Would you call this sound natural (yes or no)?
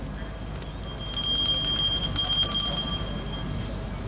yes